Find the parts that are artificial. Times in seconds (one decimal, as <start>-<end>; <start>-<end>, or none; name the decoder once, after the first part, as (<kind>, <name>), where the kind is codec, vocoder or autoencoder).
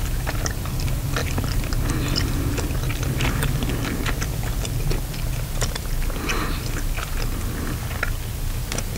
1.2-1.9 (vocoder, BigVGAN v2)